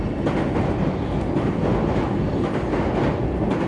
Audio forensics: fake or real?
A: real